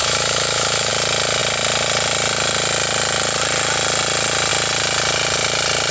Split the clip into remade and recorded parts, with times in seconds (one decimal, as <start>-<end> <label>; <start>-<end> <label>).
0.0-0.9 remade; 0.9-5.9 recorded